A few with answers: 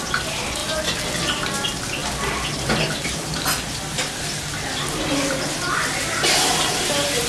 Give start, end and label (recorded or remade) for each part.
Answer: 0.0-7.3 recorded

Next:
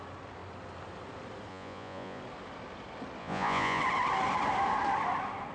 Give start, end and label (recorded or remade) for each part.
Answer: 0.0-1.5 recorded; 1.5-2.2 remade; 2.2-3.2 recorded; 3.2-3.8 remade; 3.8-5.5 recorded

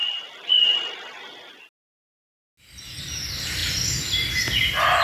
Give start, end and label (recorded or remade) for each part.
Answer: 0.0-5.0 recorded

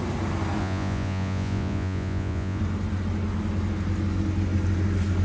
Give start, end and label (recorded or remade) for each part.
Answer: 0.0-0.6 recorded; 0.6-2.6 remade; 2.6-5.2 recorded

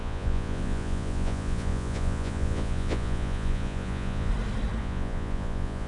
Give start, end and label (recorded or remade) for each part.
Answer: 0.0-4.3 remade; 4.3-4.8 recorded; 4.8-5.9 remade

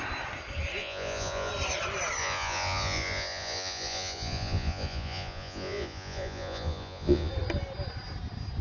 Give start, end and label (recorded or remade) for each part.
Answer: 0.0-0.8 recorded; 0.8-1.5 remade; 1.5-2.2 recorded; 2.2-7.3 remade; 7.3-8.6 recorded